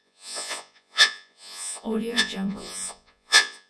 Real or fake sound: fake